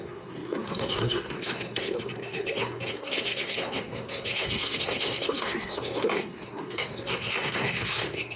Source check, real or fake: fake